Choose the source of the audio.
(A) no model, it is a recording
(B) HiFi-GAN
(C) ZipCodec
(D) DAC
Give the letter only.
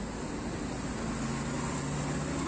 A